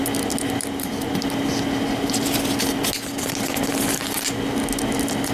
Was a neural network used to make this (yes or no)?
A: no